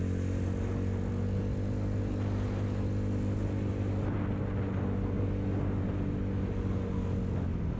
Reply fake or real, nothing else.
real